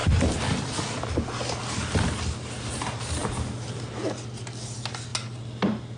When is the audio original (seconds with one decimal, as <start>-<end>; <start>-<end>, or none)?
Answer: 0.0-6.0